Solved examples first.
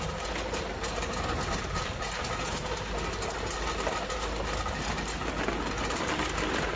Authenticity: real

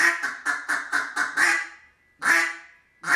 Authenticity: real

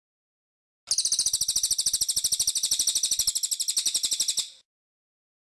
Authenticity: real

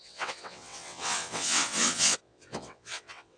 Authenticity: fake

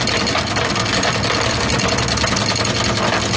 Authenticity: real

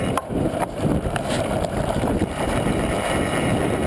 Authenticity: fake